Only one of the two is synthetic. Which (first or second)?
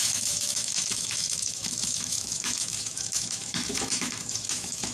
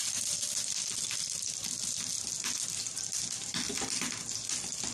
first